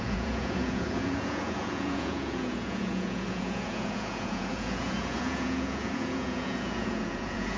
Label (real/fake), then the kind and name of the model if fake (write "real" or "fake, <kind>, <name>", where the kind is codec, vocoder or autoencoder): fake, vocoder, Vocos